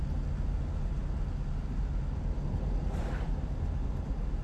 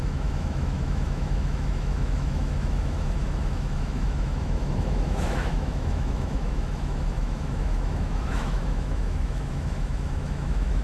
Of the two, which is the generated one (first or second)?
second